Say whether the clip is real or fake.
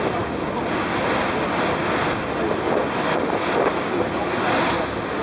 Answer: real